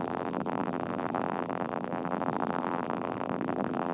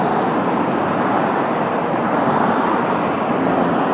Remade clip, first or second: first